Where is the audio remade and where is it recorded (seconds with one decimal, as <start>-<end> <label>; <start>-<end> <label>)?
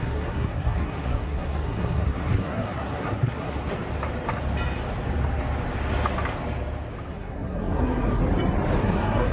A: 0.0-3.6 remade; 3.6-7.1 recorded; 7.1-8.2 remade; 8.2-8.8 recorded; 8.8-9.3 remade